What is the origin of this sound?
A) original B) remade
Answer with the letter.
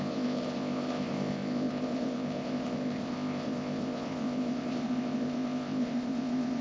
B